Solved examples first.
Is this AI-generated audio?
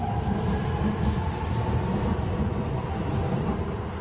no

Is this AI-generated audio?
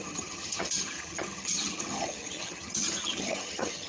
yes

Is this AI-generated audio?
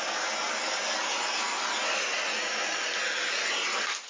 no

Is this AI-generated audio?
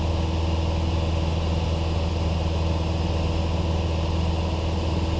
no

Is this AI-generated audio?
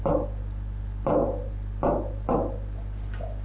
no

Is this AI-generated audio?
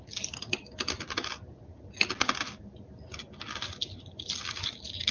no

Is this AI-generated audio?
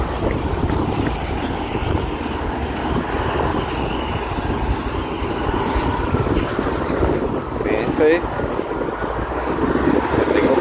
no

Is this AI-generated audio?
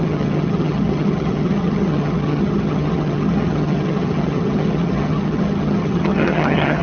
yes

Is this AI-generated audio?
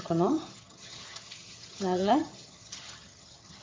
yes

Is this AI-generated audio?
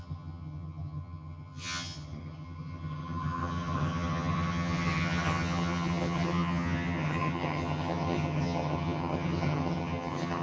yes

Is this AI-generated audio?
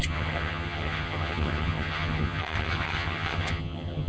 yes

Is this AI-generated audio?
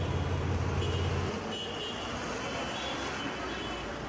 no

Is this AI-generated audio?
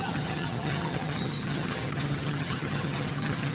yes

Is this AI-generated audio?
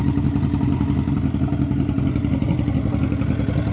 no